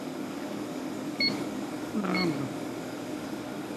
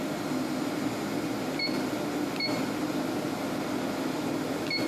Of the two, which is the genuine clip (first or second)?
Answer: second